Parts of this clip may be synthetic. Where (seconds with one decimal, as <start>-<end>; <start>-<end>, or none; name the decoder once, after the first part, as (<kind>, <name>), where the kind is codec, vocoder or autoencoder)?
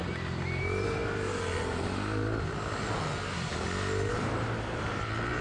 none